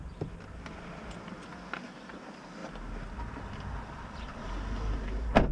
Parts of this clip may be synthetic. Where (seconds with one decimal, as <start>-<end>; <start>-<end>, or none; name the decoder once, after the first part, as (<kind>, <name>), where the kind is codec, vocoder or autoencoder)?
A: none